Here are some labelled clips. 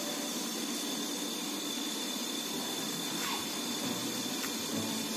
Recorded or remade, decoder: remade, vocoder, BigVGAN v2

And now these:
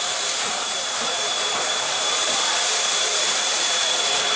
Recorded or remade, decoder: remade, vocoder, BigVGAN v2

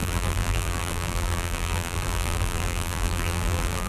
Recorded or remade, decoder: remade, vocoder, BigVGAN v2